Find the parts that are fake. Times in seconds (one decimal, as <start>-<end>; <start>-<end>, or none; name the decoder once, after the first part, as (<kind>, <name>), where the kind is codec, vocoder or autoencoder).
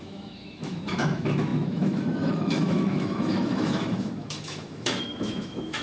0.0-5.8 (autoencoder, DAC-VAE)